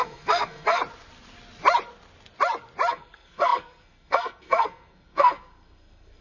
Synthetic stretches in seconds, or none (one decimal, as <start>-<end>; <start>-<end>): 0.0-0.8; 2.9-6.2